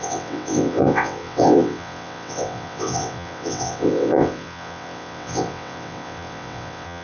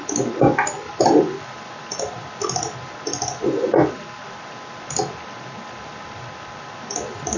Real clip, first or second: second